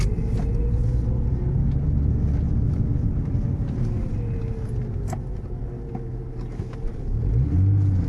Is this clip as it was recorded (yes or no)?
yes